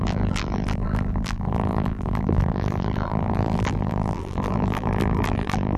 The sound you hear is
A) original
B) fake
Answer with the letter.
B